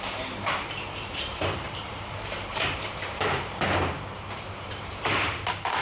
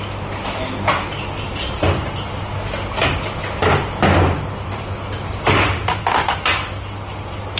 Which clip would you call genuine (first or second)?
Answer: second